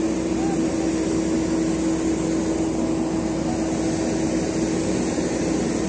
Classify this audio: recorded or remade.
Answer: recorded